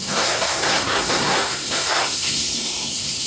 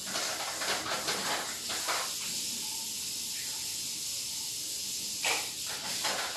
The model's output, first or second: first